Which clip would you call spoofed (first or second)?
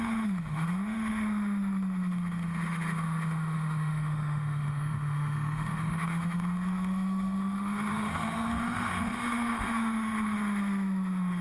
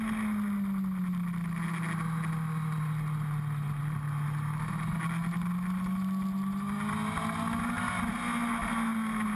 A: first